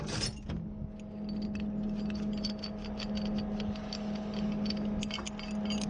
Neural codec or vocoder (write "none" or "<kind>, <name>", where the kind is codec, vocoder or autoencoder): none